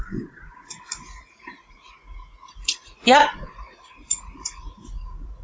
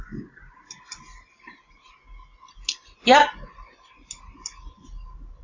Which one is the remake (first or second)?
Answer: first